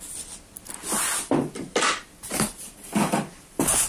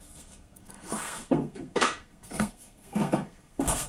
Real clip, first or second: first